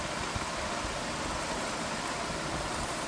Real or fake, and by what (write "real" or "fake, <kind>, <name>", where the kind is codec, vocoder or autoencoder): real